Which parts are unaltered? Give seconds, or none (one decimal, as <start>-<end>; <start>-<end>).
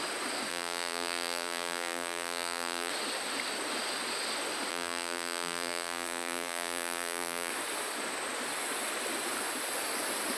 0.0-0.5; 2.9-4.7; 7.5-10.4